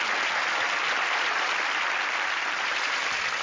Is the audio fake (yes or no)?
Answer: no